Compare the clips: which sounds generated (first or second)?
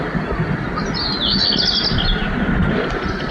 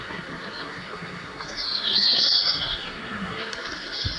second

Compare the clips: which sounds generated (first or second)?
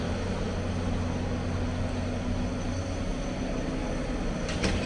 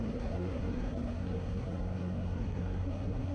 second